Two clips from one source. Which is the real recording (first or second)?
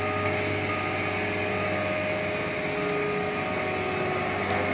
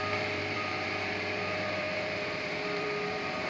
first